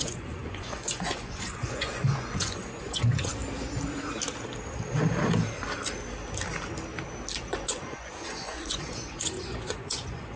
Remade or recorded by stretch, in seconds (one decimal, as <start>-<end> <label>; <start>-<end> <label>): 0.0-3.4 remade; 3.4-7.4 recorded; 7.4-10.4 remade

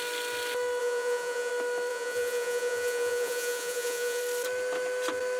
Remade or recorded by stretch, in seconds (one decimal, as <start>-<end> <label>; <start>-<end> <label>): 0.0-0.8 recorded; 0.8-1.5 remade; 1.5-1.9 recorded; 1.9-4.2 remade; 4.2-5.4 recorded